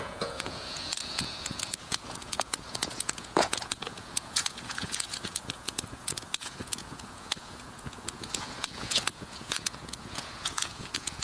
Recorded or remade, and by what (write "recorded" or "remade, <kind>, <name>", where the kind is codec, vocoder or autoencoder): remade, vocoder, Vocos